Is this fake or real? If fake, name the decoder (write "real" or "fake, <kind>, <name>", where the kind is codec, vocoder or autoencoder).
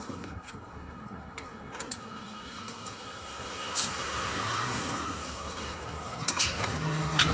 fake, codec, SNAC